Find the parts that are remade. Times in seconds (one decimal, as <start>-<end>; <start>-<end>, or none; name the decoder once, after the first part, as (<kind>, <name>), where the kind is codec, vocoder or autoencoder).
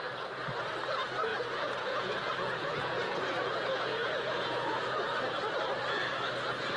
1.3-5.2 (vocoder, Vocos)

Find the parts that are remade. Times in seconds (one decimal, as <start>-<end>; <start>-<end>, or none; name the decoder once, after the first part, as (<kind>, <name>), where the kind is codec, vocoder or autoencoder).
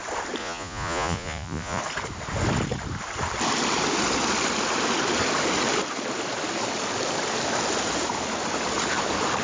0.4-1.8 (vocoder, Vocos)